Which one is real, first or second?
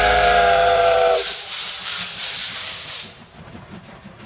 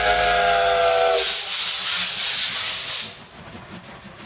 second